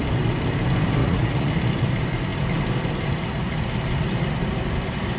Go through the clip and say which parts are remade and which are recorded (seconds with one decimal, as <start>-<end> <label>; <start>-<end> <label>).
0.0-1.0 recorded; 1.0-1.5 remade; 1.5-5.2 recorded